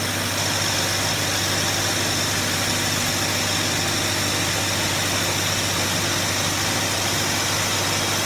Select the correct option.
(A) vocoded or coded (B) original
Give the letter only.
B